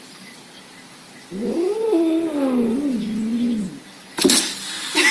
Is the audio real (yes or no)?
yes